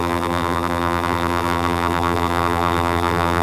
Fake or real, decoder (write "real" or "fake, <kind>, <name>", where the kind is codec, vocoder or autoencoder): fake, vocoder, BigVGAN v2